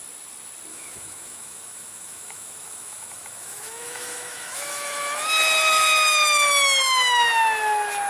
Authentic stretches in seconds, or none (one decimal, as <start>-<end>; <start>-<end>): 0.0-0.7; 5.3-8.1